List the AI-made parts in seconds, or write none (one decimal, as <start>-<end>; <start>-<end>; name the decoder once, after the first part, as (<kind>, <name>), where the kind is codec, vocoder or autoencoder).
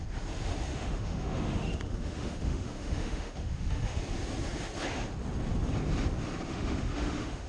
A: 0.7-4.0 (autoencoder, DAC-VAE); 6.5-7.5